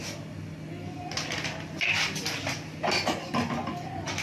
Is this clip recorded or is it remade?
recorded